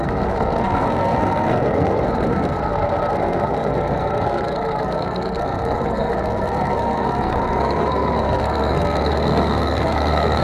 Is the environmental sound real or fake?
fake